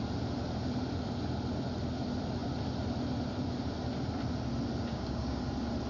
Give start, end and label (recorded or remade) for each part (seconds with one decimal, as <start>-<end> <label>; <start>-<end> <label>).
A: 0.0-4.9 recorded; 4.9-5.4 remade; 5.4-5.9 recorded